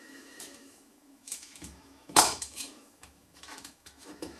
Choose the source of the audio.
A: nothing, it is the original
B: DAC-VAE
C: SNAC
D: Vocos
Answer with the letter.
B